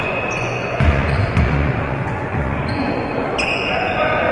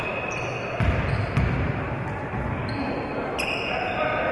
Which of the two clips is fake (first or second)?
first